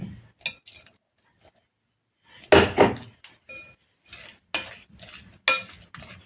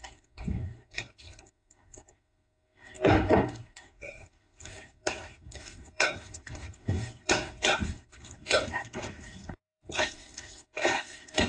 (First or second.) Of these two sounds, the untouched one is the first